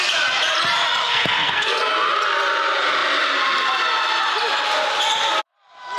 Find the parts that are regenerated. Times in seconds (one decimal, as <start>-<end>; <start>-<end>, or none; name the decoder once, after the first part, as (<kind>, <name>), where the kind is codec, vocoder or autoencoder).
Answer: 1.0-1.8 (codec, SNAC)